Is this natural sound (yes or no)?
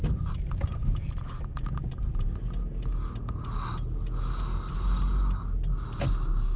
yes